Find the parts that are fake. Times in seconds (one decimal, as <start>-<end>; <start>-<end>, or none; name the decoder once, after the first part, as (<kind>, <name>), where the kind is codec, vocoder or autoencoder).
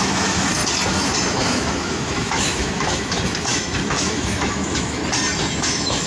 0.0-0.6 (autoencoder, DAC-VAE); 1.3-5.0; 5.6-6.1